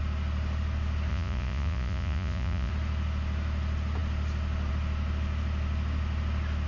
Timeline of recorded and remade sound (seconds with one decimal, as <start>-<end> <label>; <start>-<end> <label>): 0.0-1.1 recorded; 1.1-2.7 remade; 2.7-6.7 recorded